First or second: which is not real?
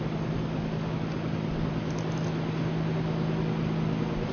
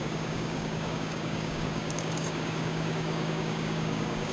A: second